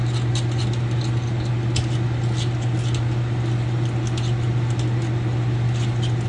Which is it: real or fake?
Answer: real